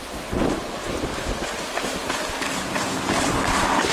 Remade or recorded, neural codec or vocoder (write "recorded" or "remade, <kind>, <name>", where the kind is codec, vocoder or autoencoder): recorded